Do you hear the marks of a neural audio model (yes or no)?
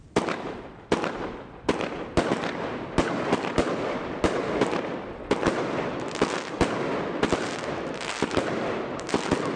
no